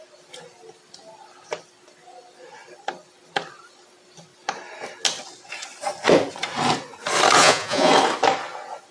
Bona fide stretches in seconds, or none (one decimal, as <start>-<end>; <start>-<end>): 0.0-7.4; 7.9-8.9